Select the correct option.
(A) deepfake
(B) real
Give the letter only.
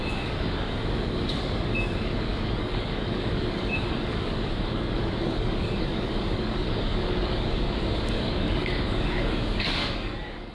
A